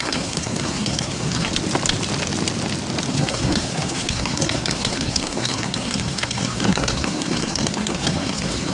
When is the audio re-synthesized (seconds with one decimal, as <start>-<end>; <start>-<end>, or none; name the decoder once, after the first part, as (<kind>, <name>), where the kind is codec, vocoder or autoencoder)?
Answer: 0.0-1.5 (codec, SNAC); 3.1-8.7